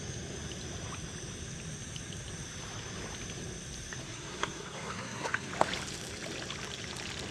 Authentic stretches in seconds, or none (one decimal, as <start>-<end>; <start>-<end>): 0.0-4.0; 5.5-7.3